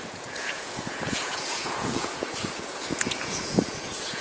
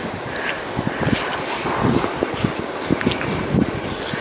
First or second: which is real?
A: second